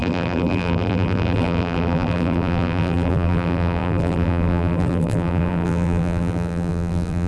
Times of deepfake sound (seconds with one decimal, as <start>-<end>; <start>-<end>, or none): 0.0-7.3